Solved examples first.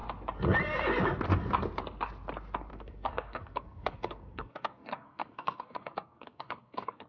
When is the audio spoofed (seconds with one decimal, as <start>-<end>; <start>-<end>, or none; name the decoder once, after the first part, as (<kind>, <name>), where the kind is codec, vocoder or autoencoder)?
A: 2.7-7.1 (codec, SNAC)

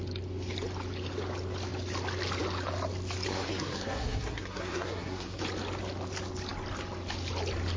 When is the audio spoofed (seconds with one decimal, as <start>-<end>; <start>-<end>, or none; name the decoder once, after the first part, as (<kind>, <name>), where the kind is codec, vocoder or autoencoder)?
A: 3.3-5.4 (codec, SNAC)

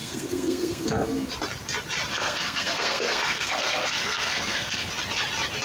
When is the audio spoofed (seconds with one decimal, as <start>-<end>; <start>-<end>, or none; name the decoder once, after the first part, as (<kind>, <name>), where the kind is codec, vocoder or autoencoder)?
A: 0.0-1.3 (codec, SNAC); 2.1-4.9

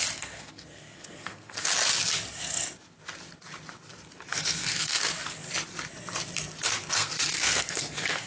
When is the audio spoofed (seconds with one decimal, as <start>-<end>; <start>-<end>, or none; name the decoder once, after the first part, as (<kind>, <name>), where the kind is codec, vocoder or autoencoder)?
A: 0.0-1.7 (codec, SNAC); 4.4-5.0; 6.9-8.3

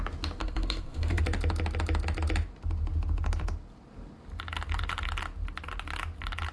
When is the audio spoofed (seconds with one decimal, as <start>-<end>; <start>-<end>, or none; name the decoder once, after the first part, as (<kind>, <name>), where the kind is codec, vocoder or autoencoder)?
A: 0.4-1.2 (codec, SNAC)

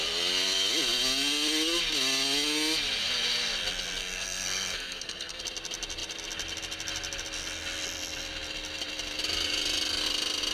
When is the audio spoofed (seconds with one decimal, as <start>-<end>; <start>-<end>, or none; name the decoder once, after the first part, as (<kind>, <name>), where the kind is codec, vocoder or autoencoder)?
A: 4.0-5.4 (codec, SNAC)

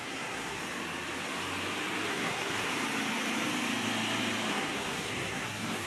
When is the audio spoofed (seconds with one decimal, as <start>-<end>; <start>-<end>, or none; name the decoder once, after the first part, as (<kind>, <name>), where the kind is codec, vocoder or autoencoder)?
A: 0.0-0.6 (codec, SNAC); 2.1-2.7; 4.5-5.9

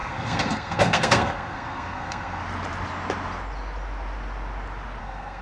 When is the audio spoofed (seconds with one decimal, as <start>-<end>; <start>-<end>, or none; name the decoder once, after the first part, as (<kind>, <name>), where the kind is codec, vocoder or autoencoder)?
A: 0.0-2.4 (codec, SNAC); 5.0-5.4